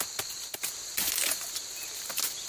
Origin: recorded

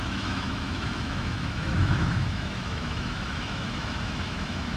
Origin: remade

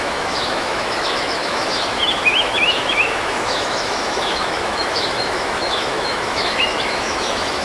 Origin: remade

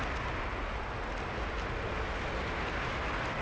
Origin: recorded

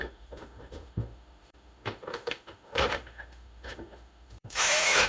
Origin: remade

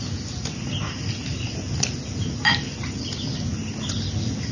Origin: recorded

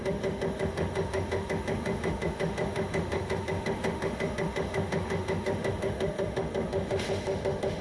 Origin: remade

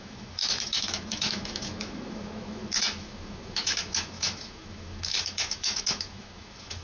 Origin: remade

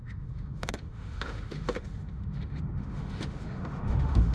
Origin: remade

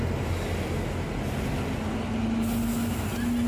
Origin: recorded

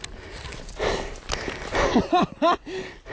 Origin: recorded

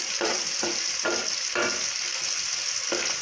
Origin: recorded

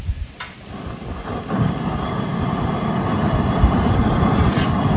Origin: recorded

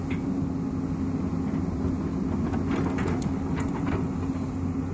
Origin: recorded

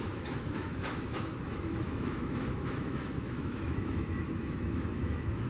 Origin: remade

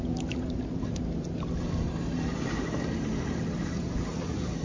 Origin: recorded